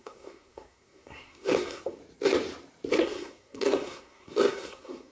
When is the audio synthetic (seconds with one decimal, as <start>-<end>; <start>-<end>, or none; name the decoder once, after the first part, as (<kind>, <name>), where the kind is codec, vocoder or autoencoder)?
0.0-2.0 (codec, SNAC); 2.9-5.1